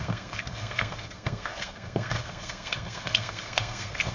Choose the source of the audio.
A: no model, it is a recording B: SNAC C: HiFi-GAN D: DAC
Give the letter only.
B